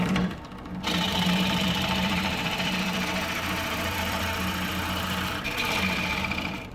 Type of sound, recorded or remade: remade